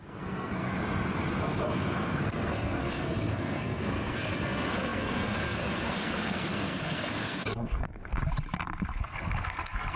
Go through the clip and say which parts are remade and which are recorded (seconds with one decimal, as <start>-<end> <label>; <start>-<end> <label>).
0.0-0.8 remade; 0.8-1.4 recorded; 1.4-8.2 remade; 8.2-9.0 recorded; 9.0-10.0 remade